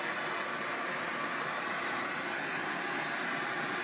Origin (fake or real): real